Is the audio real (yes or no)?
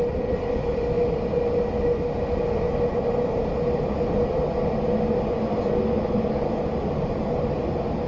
yes